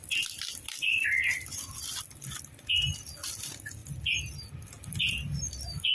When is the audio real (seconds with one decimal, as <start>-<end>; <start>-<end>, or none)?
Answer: 2.0-5.9